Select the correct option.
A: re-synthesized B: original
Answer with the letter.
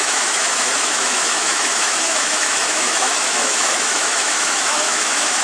A